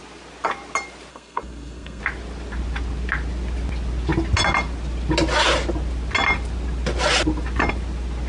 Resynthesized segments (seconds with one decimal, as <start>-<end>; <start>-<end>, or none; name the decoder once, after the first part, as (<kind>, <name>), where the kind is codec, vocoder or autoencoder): 1.1-2.0 (codec, SNAC)